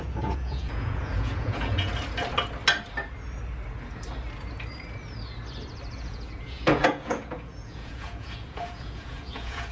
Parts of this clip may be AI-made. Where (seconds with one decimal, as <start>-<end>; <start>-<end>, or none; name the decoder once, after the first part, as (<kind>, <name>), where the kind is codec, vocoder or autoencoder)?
0.0-1.9 (vocoder, Vocos); 5.9-9.7